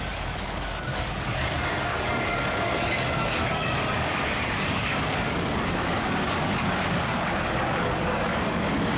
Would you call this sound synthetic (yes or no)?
yes